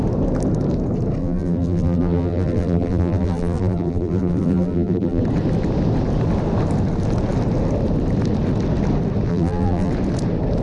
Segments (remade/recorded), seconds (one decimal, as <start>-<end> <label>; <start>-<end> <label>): 0.0-1.2 recorded; 1.2-5.2 remade; 5.2-9.3 recorded; 9.3-9.9 remade; 9.9-10.6 recorded